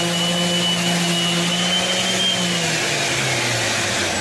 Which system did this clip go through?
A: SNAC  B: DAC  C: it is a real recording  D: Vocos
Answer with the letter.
C